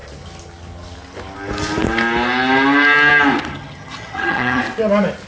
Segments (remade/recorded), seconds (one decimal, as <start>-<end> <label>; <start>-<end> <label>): 0.0-3.5 recorded; 3.5-4.6 remade; 4.6-5.3 recorded